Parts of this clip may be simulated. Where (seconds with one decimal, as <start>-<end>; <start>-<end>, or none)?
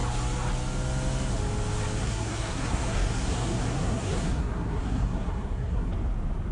2.0-5.9